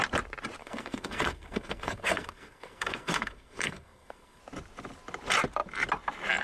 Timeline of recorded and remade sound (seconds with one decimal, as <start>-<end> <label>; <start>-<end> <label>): 0.0-0.6 recorded; 0.6-4.4 remade; 4.4-6.4 recorded